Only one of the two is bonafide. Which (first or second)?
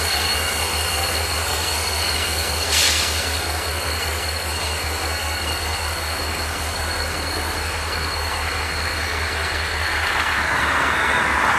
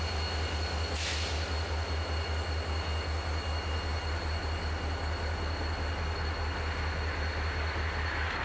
second